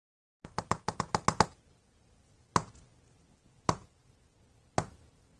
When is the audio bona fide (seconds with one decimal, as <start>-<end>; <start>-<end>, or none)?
0.0-5.4